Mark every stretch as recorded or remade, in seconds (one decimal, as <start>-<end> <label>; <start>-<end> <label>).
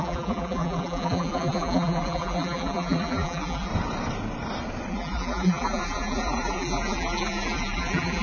0.0-3.7 remade; 3.7-4.9 recorded; 4.9-8.2 remade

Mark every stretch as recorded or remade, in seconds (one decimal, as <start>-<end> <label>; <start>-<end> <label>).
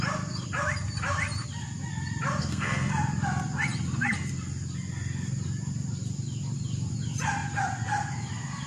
0.0-2.4 recorded; 2.4-2.9 remade; 2.9-8.7 recorded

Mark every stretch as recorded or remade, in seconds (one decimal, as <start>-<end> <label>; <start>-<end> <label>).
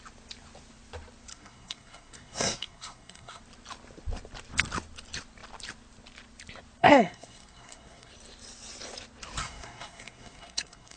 0.0-1.3 recorded; 1.3-3.4 remade; 3.4-6.8 recorded; 6.8-8.1 remade; 8.1-9.4 recorded; 9.4-11.0 remade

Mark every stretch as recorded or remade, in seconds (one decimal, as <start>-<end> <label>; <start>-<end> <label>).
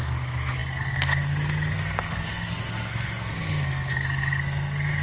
0.0-5.0 remade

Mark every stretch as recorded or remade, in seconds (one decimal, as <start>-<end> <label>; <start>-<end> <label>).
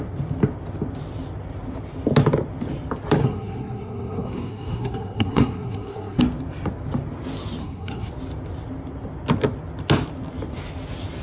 0.0-3.2 recorded; 3.2-6.2 remade; 6.2-7.6 recorded; 7.6-8.1 remade; 8.1-11.2 recorded